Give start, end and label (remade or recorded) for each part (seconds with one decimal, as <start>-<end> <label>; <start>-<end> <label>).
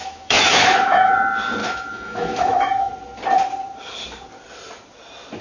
0.0-1.1 remade; 1.1-1.6 recorded; 1.6-2.9 remade; 2.9-5.4 recorded